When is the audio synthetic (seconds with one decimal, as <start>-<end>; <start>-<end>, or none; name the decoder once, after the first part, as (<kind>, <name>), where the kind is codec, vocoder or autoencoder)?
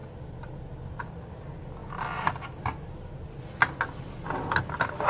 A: none